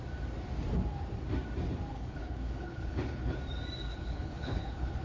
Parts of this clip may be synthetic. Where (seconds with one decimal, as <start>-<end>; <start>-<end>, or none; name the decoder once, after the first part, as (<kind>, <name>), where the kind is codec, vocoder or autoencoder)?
1.9-3.4 (codec, HILCodec); 3.9-5.0